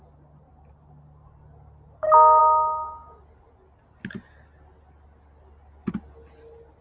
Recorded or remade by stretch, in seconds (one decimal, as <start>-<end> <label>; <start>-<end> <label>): 0.0-6.8 recorded